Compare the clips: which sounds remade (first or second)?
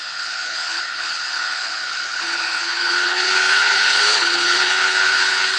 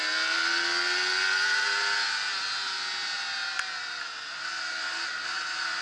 first